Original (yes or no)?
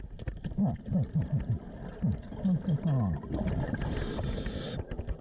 yes